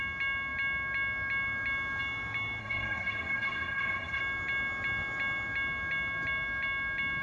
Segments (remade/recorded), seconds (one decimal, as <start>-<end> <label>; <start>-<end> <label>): 0.0-2.6 recorded; 2.6-4.2 remade; 4.2-7.2 recorded